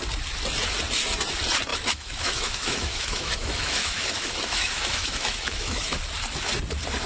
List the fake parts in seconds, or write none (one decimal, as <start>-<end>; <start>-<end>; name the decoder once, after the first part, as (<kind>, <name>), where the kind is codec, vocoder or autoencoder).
1.7-6.0 (autoencoder, DAC-VAE)